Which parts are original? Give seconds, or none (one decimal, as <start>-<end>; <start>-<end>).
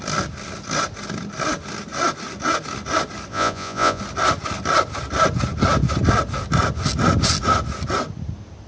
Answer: 0.0-3.3; 4.0-8.7